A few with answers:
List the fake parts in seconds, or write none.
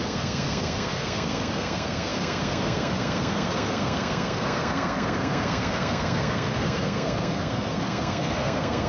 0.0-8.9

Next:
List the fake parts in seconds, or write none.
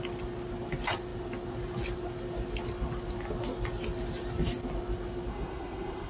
5.3-6.1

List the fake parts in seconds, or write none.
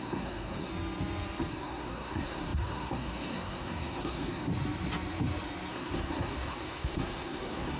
0.0-0.7; 1.5-4.5; 5.7-7.8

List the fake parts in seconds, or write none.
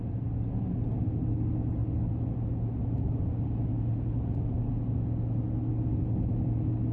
none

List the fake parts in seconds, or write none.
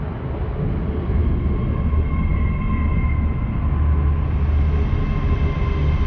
none